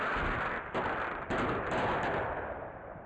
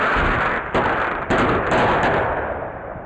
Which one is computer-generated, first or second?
first